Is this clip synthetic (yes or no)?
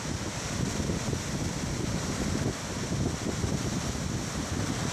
no